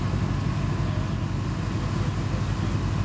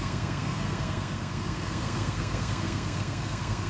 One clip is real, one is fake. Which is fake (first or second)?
second